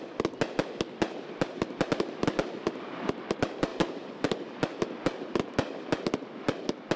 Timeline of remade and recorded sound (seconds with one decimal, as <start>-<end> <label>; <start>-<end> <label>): 0.0-7.0 recorded